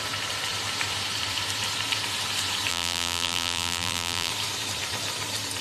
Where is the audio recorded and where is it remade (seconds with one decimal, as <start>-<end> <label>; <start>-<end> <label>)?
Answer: 0.0-2.7 recorded; 2.7-4.3 remade; 4.3-5.6 recorded